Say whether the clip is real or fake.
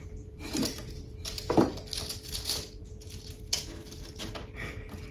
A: real